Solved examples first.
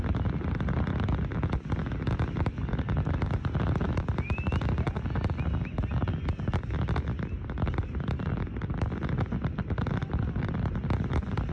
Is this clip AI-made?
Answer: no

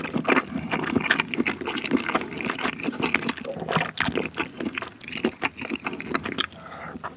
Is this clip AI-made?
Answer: no